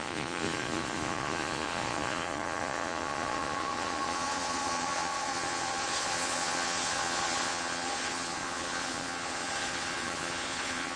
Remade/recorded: remade